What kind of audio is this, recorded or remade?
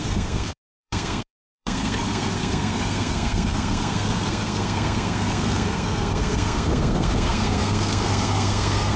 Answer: remade